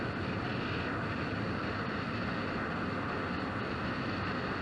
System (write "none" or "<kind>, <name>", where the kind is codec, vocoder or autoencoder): none